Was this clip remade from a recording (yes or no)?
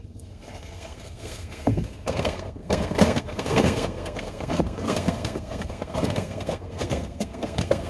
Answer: yes